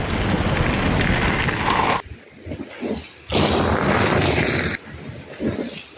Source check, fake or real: real